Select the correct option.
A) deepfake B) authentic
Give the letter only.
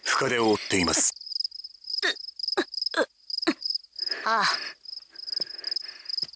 B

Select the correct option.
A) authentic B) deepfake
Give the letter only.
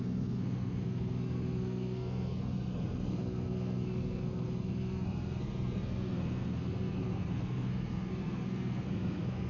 B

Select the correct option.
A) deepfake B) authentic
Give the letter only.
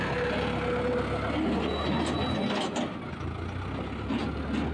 B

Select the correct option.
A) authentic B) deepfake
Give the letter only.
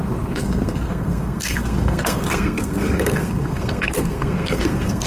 B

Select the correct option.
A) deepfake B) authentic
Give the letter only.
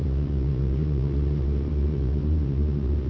A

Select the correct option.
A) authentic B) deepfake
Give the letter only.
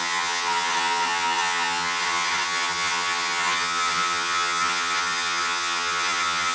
B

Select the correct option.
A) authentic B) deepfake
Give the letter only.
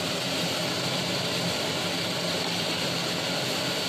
A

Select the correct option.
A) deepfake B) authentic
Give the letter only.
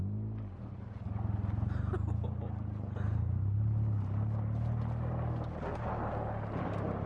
B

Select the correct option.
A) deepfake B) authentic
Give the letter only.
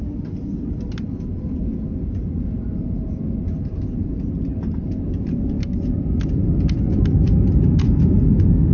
B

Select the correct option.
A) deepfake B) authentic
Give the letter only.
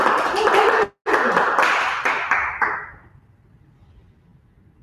B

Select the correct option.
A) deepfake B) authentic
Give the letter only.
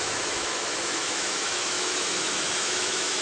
A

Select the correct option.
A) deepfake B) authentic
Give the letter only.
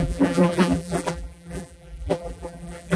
A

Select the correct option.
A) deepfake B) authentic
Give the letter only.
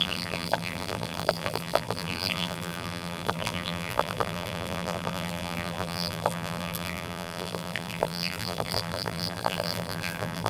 A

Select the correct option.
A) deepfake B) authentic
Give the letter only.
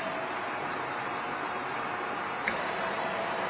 A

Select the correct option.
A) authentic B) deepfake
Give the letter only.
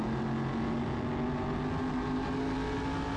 A